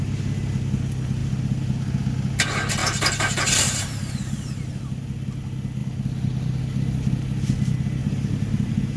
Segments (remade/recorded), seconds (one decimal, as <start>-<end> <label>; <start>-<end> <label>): 0.0-2.8 recorded; 2.8-4.8 remade; 4.8-8.0 recorded; 8.0-9.0 remade